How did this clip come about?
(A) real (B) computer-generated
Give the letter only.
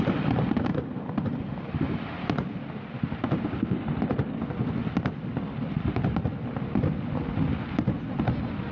A